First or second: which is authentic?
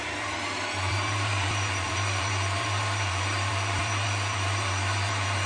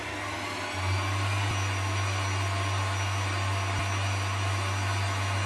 second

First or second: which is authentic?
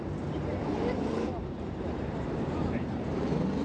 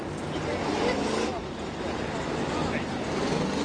second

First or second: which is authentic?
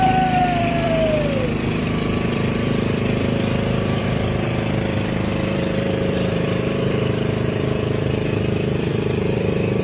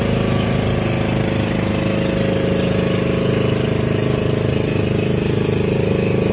second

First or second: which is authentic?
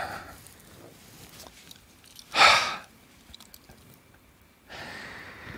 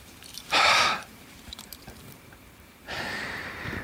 first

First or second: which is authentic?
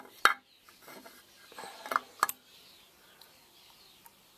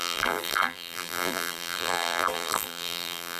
first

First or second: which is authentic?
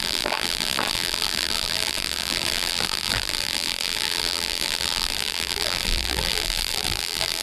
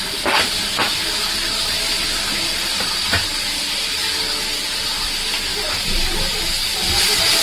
second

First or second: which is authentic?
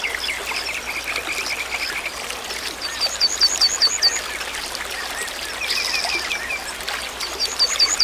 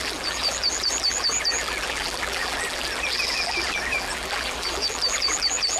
first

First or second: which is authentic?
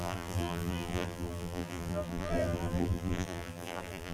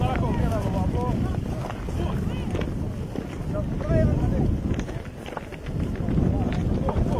second